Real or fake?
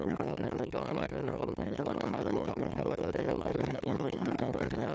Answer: fake